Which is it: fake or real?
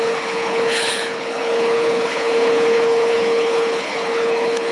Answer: fake